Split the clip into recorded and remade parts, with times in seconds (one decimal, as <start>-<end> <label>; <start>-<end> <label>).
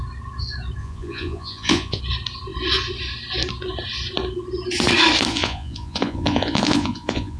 0.0-0.8 recorded; 0.8-2.0 remade; 2.0-5.3 recorded; 5.3-7.4 remade